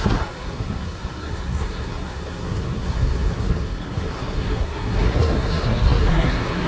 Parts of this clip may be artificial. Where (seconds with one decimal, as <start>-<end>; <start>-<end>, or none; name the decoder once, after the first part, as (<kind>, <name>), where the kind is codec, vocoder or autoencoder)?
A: 0.0-6.7 (codec, SNAC)